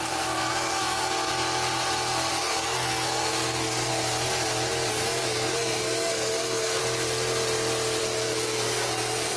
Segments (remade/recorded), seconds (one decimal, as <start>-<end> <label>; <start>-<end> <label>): 0.0-1.3 remade; 1.3-2.3 recorded; 2.3-3.9 remade; 3.9-4.9 recorded; 4.9-6.8 remade; 6.8-8.0 recorded; 8.0-9.4 remade